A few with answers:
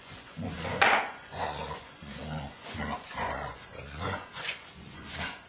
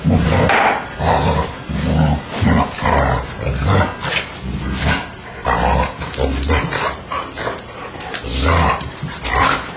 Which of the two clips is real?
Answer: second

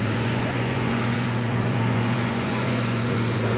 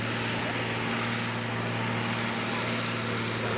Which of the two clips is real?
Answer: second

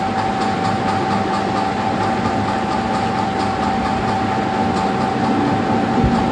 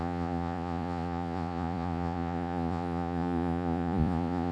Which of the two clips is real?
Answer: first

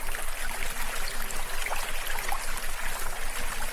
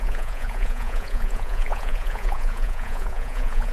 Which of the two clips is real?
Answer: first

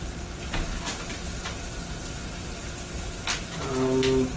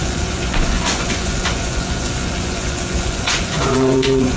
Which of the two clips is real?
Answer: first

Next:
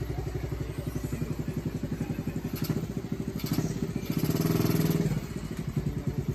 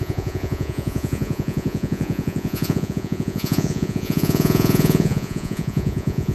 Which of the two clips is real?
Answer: first